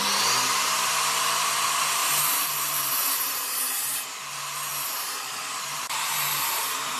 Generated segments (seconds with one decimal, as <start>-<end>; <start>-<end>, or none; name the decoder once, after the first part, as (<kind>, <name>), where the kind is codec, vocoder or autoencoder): 2.0-3.7 (vocoder, BigVGAN v2); 4.7-7.0